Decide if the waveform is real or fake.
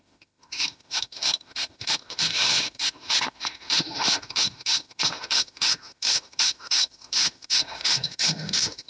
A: fake